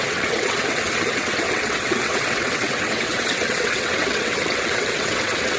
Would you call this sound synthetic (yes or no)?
yes